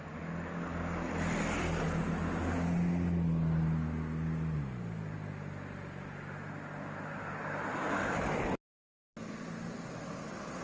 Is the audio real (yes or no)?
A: yes